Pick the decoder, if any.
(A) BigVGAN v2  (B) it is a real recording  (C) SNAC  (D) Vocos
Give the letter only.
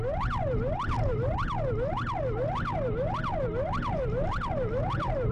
B